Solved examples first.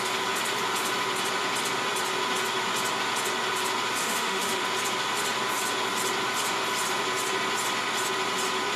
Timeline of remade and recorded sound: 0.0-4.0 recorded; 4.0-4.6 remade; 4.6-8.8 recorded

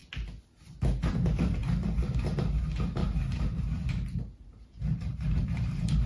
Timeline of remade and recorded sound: 0.0-3.0 recorded; 3.0-6.1 remade

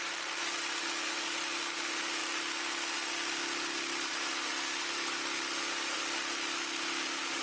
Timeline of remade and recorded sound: 0.0-7.4 recorded

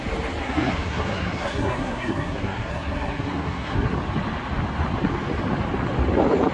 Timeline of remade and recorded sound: 0.0-0.4 recorded; 0.4-3.9 remade; 3.9-6.5 recorded

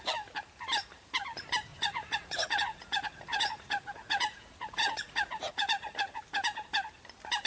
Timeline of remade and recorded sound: 0.0-1.7 recorded; 1.7-6.2 remade; 6.2-7.5 recorded

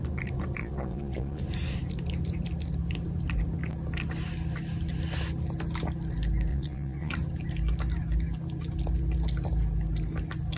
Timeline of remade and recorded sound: 0.0-0.6 recorded; 0.6-1.4 remade; 1.4-6.5 recorded; 6.5-7.1 remade; 7.1-10.6 recorded

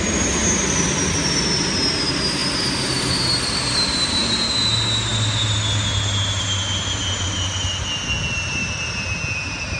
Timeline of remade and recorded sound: 0.0-9.8 recorded